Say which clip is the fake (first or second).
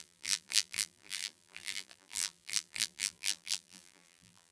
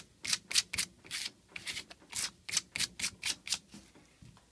first